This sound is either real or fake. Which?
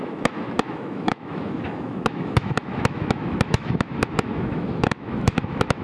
fake